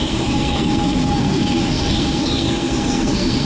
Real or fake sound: fake